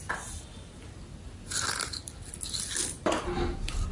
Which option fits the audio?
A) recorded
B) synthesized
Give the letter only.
A